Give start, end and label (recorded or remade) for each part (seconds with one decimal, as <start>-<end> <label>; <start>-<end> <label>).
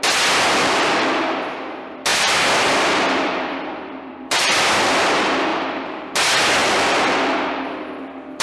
0.0-2.1 recorded; 2.1-4.8 remade; 4.8-5.5 recorded; 5.5-6.1 remade; 6.1-8.4 recorded